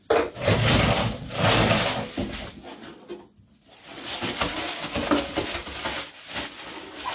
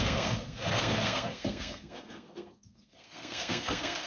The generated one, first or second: second